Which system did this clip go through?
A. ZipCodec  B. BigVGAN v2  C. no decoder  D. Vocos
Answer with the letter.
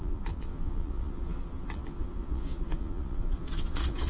D